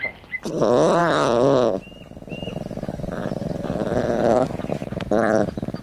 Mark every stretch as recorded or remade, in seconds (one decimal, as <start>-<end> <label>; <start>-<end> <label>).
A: 0.0-4.8 recorded; 4.8-5.8 remade